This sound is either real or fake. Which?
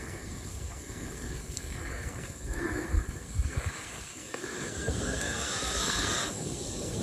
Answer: fake